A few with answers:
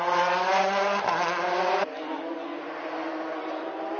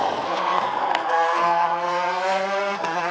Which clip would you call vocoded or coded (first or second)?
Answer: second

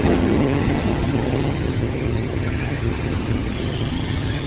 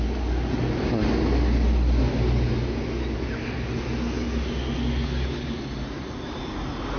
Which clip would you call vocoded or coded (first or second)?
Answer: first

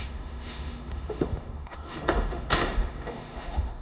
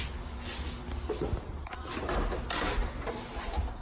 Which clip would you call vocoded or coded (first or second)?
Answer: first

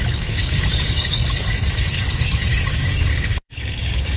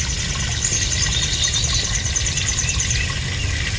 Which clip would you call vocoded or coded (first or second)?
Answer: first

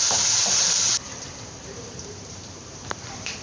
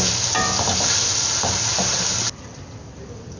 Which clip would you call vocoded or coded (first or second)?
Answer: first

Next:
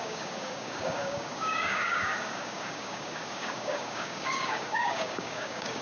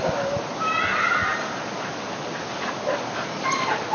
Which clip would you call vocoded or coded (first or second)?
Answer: first